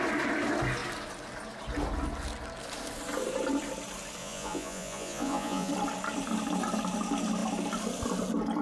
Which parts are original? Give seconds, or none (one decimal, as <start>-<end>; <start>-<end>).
0.0-4.2; 5.7-8.6